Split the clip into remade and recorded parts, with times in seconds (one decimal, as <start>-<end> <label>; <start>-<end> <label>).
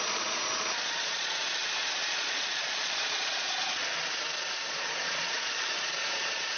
0.0-1.6 remade; 1.6-2.1 recorded; 2.1-3.8 remade; 3.8-4.7 recorded; 4.7-6.6 remade